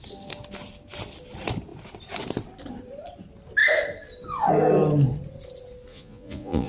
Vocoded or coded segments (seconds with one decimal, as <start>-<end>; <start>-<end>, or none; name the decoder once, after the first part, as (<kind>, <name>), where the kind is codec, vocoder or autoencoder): 5.9-6.7 (vocoder, Vocos)